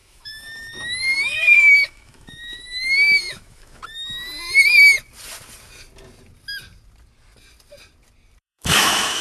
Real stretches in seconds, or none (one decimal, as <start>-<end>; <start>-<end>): 3.8-8.4